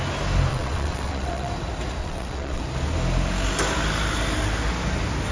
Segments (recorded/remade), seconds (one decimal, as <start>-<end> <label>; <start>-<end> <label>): 0.0-0.5 recorded; 0.5-1.5 remade; 1.5-2.0 recorded; 2.0-2.6 remade; 2.6-5.3 recorded